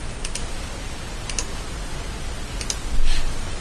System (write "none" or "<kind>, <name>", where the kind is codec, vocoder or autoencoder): none